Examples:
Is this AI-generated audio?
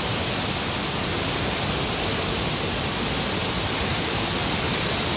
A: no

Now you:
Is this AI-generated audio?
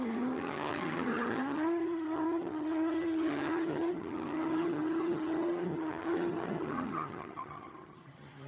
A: yes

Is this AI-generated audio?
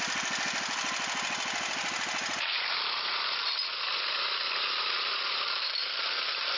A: no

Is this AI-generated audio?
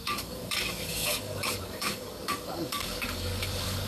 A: yes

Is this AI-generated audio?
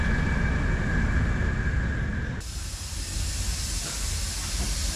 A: no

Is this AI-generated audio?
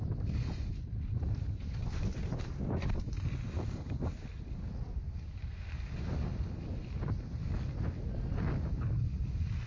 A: no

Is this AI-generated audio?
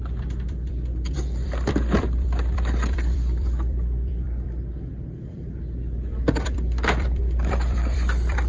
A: yes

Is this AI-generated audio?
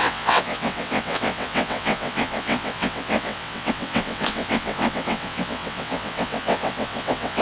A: yes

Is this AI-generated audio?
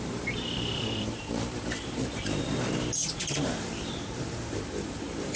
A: yes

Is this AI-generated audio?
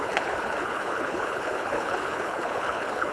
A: yes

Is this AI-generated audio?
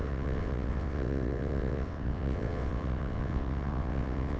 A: yes